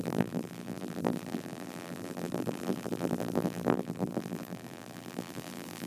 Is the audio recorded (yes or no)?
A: no